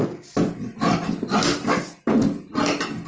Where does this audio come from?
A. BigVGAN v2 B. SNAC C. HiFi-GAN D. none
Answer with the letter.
D